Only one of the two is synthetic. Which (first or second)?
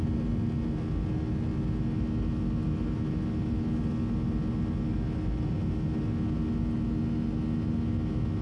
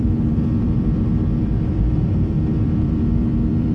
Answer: second